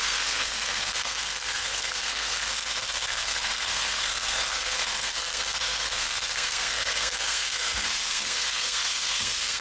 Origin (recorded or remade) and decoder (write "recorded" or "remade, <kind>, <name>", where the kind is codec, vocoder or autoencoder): remade, codec, SNAC